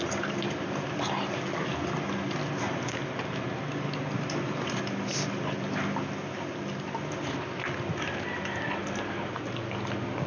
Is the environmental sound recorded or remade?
recorded